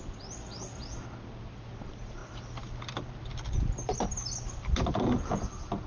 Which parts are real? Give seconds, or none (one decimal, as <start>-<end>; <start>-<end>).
0.0-5.9